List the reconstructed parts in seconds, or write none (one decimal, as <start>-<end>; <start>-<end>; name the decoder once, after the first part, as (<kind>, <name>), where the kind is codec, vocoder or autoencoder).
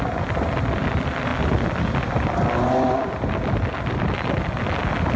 none